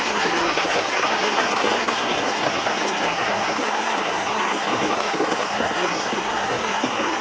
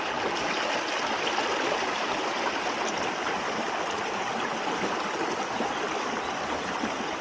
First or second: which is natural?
second